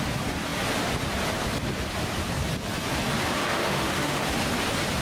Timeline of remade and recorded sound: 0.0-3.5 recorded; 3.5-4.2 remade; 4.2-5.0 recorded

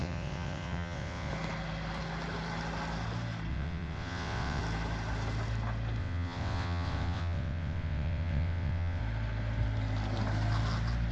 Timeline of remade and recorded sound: 0.0-1.3 remade; 1.3-3.5 recorded; 3.5-4.6 remade; 4.6-6.0 recorded; 6.0-9.0 remade; 9.0-11.1 recorded